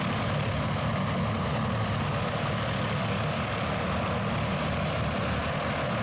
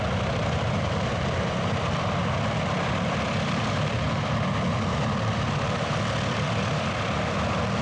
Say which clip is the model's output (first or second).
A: second